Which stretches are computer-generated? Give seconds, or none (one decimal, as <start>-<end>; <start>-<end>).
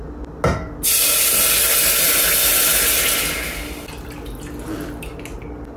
none